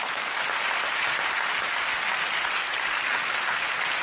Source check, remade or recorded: recorded